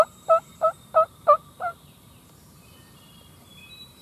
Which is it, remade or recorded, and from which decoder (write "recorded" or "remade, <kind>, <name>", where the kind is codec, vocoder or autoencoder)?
remade, vocoder, BigVGAN v2